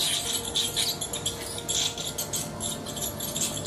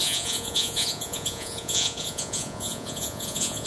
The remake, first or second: second